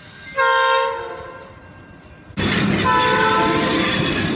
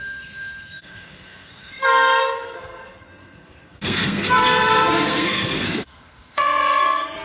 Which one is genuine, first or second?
first